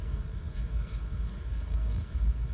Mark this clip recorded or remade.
remade